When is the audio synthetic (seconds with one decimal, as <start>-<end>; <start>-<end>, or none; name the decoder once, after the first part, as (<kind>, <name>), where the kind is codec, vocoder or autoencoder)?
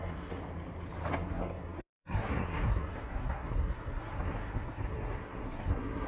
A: 0.0-0.4 (codec, SNAC); 1.1-6.1